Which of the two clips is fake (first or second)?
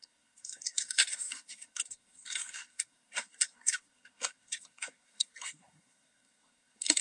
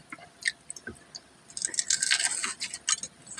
first